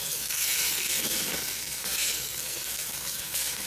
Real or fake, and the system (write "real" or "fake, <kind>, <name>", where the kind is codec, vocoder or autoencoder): fake, codec, SNAC